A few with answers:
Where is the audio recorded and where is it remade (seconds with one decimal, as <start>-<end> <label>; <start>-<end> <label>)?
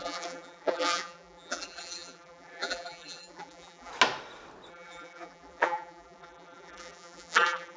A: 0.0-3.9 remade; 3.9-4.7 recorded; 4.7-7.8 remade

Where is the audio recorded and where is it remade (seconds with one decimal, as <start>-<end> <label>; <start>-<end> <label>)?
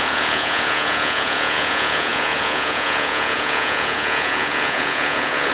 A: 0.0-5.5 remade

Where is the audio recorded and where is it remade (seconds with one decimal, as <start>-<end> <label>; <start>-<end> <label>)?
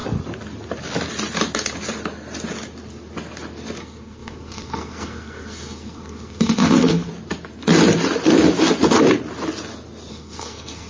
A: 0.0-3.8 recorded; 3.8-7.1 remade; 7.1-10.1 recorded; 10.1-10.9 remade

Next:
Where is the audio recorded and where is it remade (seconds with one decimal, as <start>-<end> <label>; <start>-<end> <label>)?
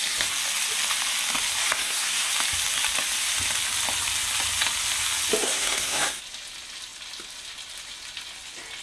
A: 0.0-1.6 recorded; 1.6-2.3 remade; 2.3-5.4 recorded; 5.4-6.2 remade; 6.2-8.8 recorded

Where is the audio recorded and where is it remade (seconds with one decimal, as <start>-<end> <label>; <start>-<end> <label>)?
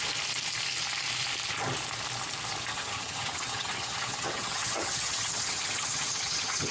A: 0.0-2.7 recorded; 2.7-6.7 remade